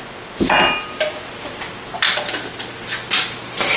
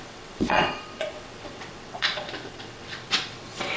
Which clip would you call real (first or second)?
first